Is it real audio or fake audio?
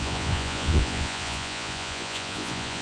fake